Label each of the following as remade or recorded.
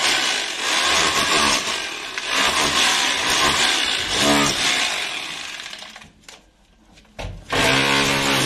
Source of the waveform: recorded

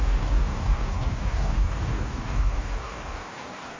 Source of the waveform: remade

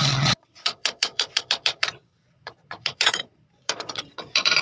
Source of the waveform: remade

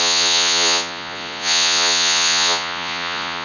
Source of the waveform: remade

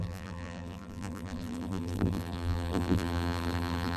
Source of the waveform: remade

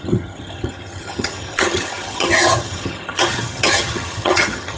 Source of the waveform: remade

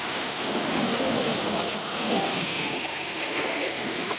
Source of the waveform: remade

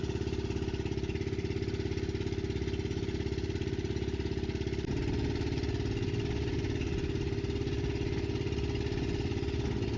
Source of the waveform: recorded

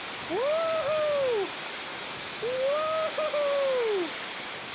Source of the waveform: remade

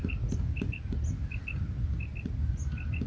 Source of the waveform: recorded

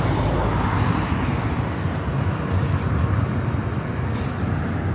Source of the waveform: recorded